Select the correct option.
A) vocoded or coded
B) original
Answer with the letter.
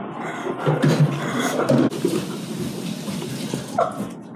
B